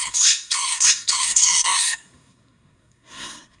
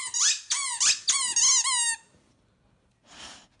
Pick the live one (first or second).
second